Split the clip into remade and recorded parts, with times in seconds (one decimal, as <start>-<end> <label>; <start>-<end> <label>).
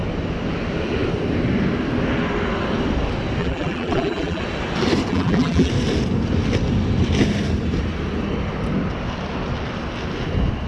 0.0-3.4 recorded; 3.4-4.4 remade; 4.4-5.1 recorded; 5.1-5.7 remade; 5.7-10.7 recorded